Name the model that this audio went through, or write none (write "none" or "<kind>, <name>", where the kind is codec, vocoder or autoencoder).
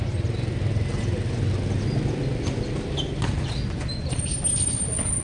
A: none